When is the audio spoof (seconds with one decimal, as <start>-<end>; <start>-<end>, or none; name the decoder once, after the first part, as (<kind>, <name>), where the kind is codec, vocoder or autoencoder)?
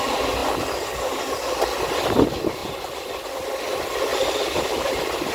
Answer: 2.6-3.3 (vocoder, BigVGAN v2); 4.1-5.3